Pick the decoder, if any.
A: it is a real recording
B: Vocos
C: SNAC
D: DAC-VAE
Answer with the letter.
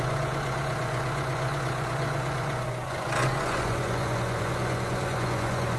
B